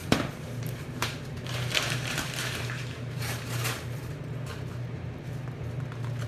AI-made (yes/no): yes